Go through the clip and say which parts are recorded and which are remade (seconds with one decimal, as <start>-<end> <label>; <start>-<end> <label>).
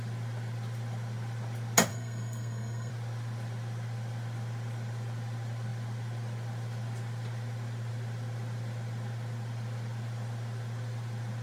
0.0-1.9 recorded; 1.9-2.9 remade; 2.9-11.4 recorded